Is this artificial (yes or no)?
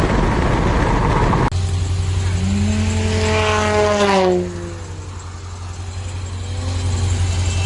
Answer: no